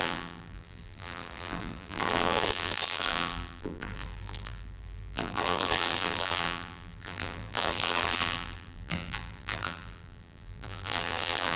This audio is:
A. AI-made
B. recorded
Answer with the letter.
A